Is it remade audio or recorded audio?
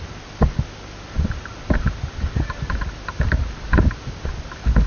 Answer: recorded